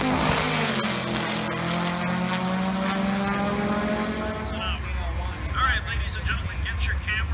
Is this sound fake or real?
real